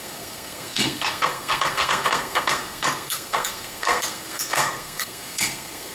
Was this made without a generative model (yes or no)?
no